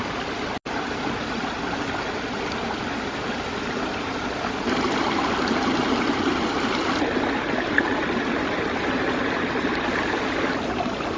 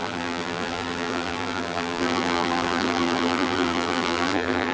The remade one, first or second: second